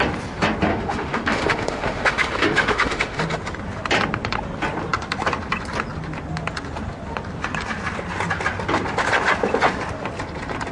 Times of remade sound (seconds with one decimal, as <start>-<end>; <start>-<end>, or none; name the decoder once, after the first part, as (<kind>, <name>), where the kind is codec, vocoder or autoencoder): 0.7-3.2 (autoencoder, DAC-VAE)